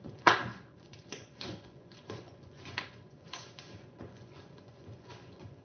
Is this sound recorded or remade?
remade